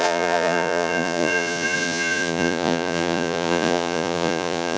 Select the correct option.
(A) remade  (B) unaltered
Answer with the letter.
A